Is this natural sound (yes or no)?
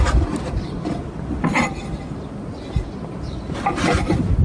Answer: yes